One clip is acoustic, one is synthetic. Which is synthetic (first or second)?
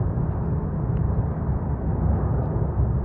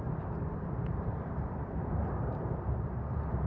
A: second